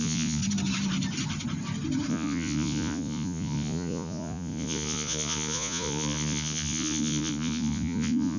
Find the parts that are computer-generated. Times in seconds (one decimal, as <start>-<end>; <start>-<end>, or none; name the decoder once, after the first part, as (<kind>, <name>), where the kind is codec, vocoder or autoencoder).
0.0-0.4 (vocoder, Vocos); 2.1-8.4